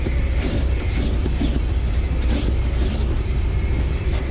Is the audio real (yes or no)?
no